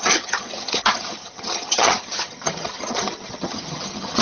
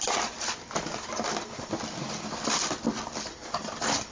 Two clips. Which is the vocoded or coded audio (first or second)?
first